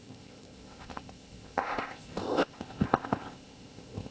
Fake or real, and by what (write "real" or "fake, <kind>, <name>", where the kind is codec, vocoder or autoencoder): fake, codec, ZipCodec